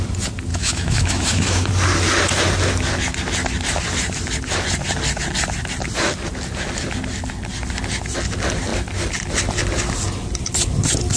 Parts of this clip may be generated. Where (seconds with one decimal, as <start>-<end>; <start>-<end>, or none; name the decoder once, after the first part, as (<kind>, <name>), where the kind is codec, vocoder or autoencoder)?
0.5-1.7 (autoencoder, DAC-VAE)